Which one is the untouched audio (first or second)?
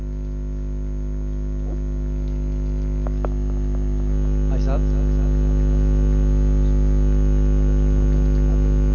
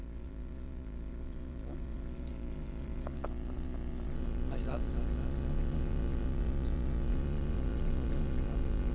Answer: first